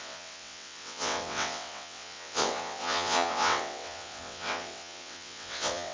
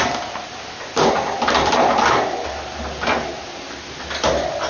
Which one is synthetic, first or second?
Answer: first